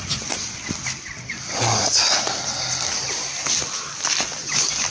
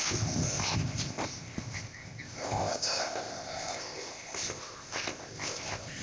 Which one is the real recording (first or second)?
first